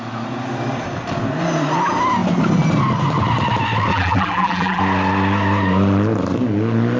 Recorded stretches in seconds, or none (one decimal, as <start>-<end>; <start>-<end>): 0.0-3.9; 4.8-7.0